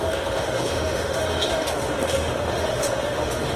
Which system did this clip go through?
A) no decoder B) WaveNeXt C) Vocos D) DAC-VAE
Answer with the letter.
D